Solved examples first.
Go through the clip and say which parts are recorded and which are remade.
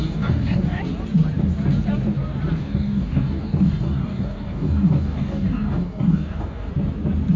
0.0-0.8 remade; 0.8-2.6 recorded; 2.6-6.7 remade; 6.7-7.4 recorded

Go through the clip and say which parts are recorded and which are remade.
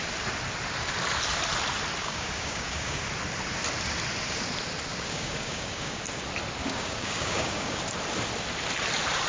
0.0-2.0 recorded; 2.0-3.0 remade; 3.0-4.9 recorded; 4.9-6.0 remade; 6.0-6.6 recorded; 6.6-7.8 remade; 7.8-9.3 recorded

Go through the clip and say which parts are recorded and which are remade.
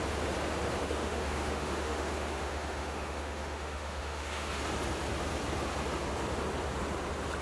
0.0-0.8 recorded; 0.8-4.6 remade; 4.6-7.4 recorded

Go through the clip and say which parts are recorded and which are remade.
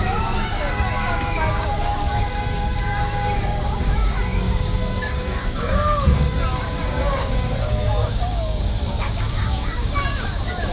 0.0-10.7 remade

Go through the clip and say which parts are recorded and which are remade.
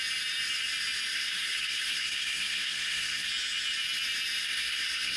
0.0-1.1 recorded; 1.1-3.3 remade; 3.3-4.4 recorded; 4.4-5.2 remade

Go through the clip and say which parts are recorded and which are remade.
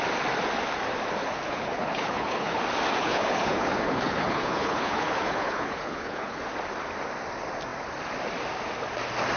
0.0-1.2 recorded; 1.2-2.6 remade; 2.6-3.0 recorded; 3.0-6.4 remade; 6.4-9.4 recorded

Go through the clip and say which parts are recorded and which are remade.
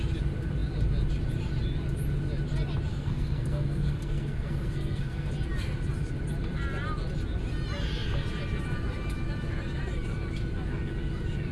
0.0-2.9 recorded; 2.9-5.3 remade; 5.3-11.5 recorded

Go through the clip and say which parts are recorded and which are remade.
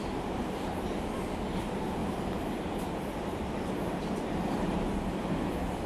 0.0-2.0 recorded; 2.0-5.5 remade; 5.5-5.9 recorded